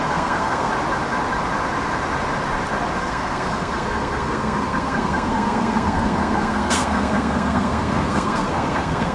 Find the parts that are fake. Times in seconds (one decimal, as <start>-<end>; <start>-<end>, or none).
0.0-0.7; 3.0-9.1

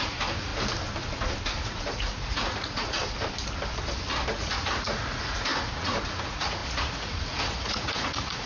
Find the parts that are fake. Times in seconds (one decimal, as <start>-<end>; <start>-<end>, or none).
0.0-0.5; 1.6-3.0; 4.3-8.5

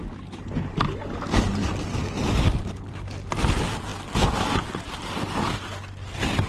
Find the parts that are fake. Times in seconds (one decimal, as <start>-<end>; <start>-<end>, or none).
none

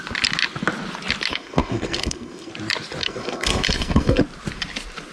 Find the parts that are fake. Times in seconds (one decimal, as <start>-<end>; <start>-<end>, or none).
1.3-2.5; 3.0-4.2

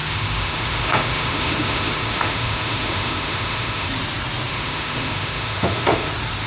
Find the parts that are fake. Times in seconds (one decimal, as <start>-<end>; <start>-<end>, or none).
0.0-3.9; 4.5-6.1

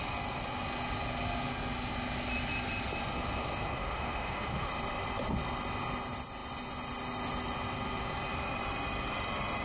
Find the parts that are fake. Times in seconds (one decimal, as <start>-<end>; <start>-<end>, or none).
3.8-4.7

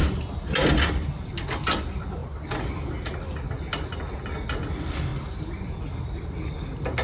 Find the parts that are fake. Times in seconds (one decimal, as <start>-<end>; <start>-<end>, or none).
none